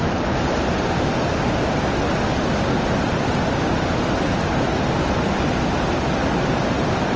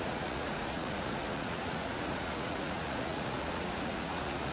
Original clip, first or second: first